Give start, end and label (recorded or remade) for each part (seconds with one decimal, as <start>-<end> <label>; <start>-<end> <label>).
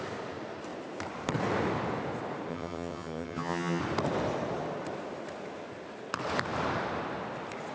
0.0-2.5 recorded; 2.5-3.8 remade; 3.8-7.7 recorded